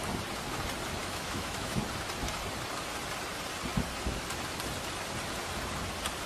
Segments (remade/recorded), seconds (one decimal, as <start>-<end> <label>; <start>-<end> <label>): 0.0-1.0 recorded; 1.0-1.8 remade; 1.8-6.3 recorded

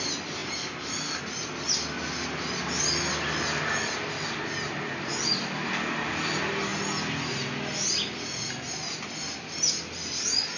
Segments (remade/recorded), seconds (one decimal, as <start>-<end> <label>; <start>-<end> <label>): 0.0-10.6 recorded

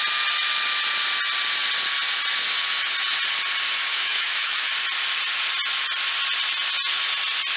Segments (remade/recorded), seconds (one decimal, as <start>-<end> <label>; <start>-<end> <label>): 0.0-3.9 recorded; 3.9-4.7 remade; 4.7-7.6 recorded

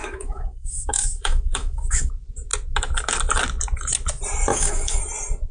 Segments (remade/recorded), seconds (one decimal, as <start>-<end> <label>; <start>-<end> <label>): 0.0-2.1 remade; 2.1-4.5 recorded; 4.5-5.0 remade; 5.0-5.5 recorded

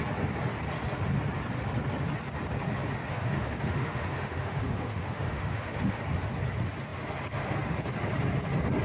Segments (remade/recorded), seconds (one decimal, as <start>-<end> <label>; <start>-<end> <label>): 0.0-3.1 recorded; 3.1-6.0 remade; 6.0-8.8 recorded